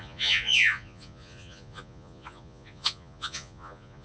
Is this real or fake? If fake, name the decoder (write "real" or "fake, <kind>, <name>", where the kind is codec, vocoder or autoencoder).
fake, vocoder, Vocos